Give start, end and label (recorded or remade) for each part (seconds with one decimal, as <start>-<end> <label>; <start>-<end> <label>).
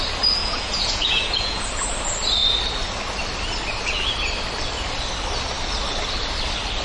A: 0.0-0.4 recorded; 0.4-1.6 remade; 1.6-6.8 recorded